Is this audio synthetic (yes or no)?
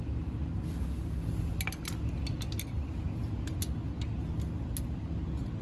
no